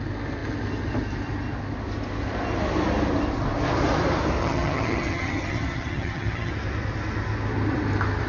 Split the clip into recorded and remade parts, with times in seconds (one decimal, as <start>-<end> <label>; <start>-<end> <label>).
0.0-4.4 recorded; 4.4-6.5 remade; 6.5-8.3 recorded

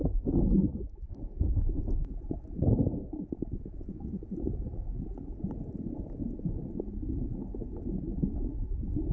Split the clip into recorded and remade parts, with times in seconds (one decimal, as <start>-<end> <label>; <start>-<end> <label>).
0.0-9.1 recorded

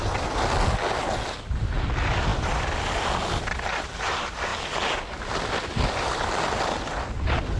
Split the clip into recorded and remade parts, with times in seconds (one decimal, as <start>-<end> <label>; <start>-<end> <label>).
0.0-7.6 recorded

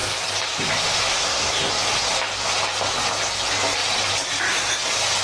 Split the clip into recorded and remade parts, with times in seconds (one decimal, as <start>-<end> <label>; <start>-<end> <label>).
0.0-1.1 recorded; 1.1-1.7 remade; 1.7-5.2 recorded

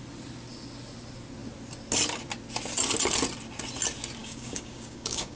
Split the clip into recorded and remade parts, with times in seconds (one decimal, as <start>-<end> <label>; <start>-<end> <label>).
0.0-4.2 recorded; 4.2-5.4 remade

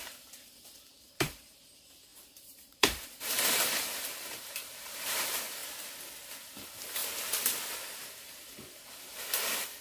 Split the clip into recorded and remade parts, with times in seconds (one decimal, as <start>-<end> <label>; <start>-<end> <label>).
0.0-5.6 remade; 5.6-6.4 recorded; 6.4-7.0 remade; 7.0-8.1 recorded; 8.1-9.8 remade